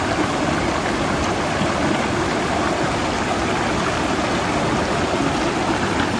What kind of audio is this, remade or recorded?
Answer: recorded